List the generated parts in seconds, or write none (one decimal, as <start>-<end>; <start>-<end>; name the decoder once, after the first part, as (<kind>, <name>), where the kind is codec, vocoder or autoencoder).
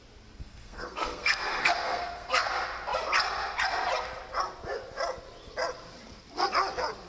0.4-2.5 (codec, SNAC)